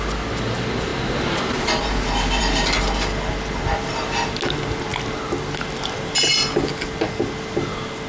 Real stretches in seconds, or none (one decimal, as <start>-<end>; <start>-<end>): 0.0-8.1